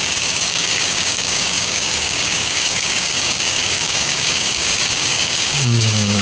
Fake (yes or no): yes